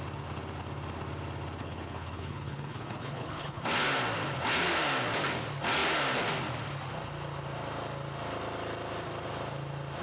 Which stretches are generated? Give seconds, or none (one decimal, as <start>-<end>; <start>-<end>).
1.6-3.6